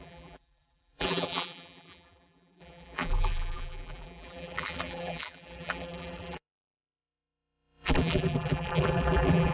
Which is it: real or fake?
fake